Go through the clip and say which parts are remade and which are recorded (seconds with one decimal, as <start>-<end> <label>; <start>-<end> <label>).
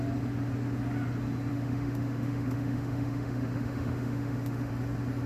0.0-1.5 recorded; 1.5-4.7 remade; 4.7-5.3 recorded